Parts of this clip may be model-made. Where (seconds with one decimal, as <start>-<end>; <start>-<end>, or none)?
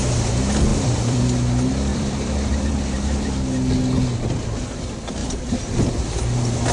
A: 0.7-1.2; 1.9-2.7; 5.2-5.9